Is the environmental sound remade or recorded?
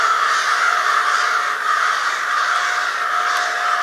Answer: recorded